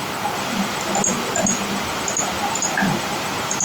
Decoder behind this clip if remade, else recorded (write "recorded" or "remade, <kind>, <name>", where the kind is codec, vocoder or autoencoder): recorded